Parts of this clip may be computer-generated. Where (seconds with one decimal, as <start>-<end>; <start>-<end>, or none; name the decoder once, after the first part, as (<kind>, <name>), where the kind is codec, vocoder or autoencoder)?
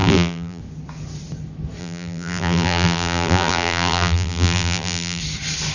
0.0-0.6 (vocoder, BigVGAN v2); 1.8-5.2